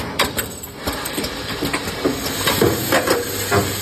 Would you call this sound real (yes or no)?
yes